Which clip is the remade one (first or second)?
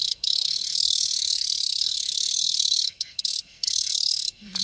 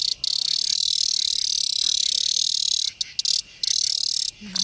first